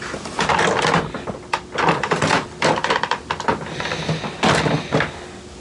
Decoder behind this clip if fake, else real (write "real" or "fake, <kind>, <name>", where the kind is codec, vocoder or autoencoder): real